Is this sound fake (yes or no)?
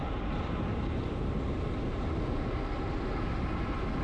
no